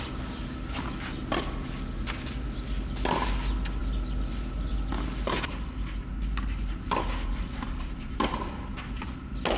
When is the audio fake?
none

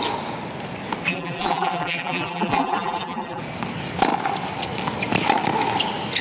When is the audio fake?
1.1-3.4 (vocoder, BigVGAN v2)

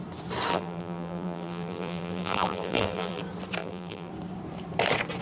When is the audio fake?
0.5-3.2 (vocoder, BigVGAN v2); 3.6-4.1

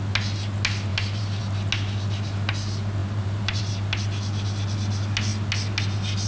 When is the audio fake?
0.9-1.4 (vocoder, BigVGAN v2); 3.0-3.6

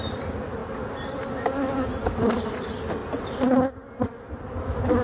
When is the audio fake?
0.0-0.6 (vocoder, BigVGAN v2); 1.4-3.0; 4.0-5.0